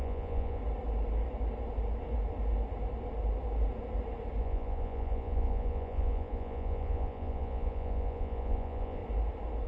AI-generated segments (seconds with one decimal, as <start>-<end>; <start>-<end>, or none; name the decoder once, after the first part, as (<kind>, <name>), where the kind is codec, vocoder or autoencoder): 0.0-0.6 (vocoder, Vocos); 4.4-9.0